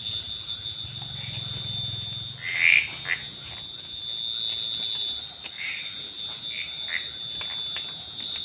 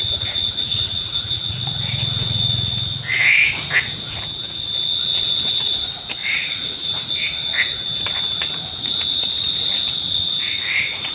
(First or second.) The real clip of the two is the first